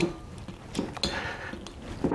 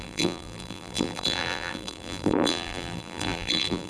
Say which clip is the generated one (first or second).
second